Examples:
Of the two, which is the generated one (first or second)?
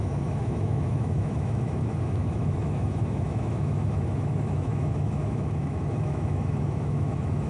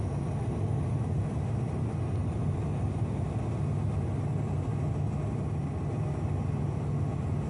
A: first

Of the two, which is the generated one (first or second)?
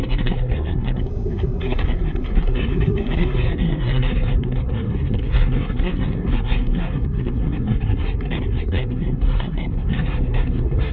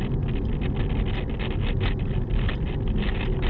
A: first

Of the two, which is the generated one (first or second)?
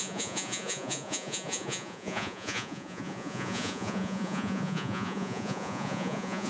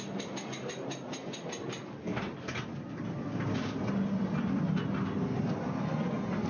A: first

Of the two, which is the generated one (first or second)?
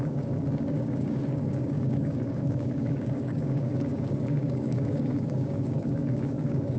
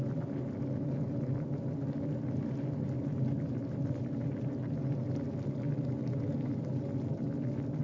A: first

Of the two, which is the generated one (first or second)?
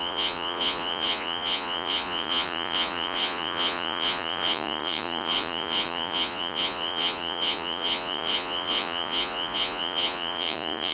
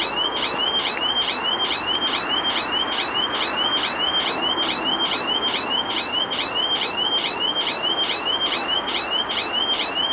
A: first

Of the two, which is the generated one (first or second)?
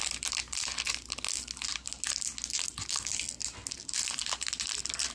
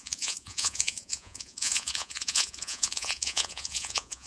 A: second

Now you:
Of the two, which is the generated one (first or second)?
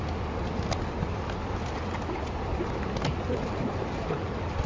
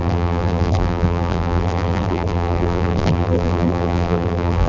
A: second